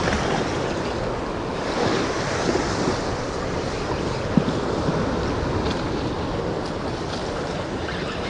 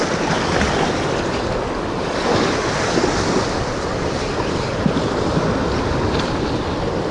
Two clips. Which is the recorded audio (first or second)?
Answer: first